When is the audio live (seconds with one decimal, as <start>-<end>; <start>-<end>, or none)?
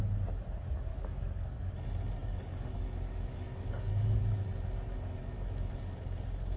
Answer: 0.0-0.9; 1.7-2.2; 4.2-6.6